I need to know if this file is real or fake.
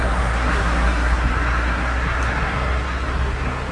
fake